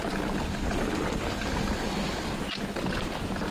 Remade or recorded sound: recorded